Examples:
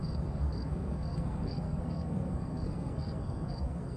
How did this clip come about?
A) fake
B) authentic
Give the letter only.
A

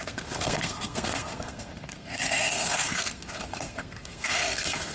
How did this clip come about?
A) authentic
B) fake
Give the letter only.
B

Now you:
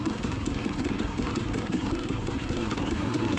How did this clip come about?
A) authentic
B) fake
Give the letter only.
B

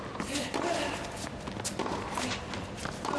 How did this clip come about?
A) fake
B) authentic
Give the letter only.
B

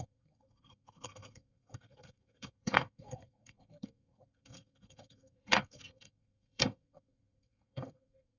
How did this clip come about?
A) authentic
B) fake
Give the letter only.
B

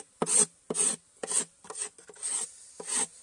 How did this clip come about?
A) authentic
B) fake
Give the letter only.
A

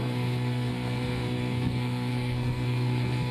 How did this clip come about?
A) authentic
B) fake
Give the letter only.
B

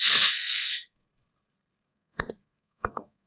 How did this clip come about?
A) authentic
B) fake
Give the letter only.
B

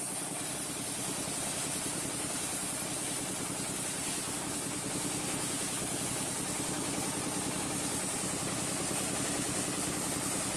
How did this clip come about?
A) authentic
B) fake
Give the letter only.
A